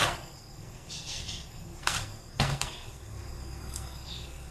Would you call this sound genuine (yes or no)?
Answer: no